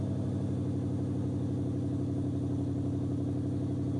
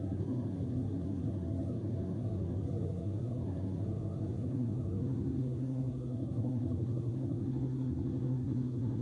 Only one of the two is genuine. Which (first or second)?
first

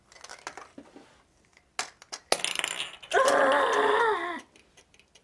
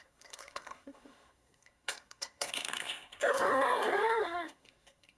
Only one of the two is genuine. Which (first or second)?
first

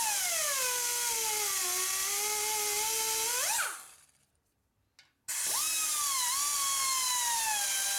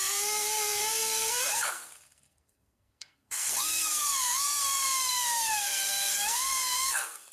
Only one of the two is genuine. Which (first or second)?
first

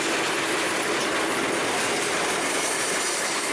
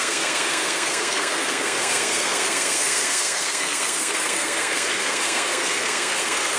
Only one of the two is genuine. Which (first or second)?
first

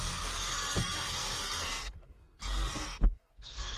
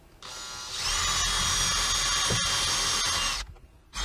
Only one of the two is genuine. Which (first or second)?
second